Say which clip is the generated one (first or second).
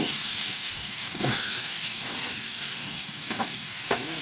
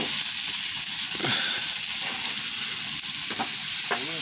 first